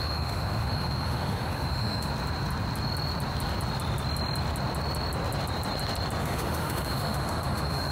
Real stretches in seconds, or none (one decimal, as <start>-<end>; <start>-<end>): 2.1-6.2